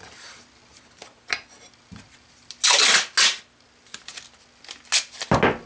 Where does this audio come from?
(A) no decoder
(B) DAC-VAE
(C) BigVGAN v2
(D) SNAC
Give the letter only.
A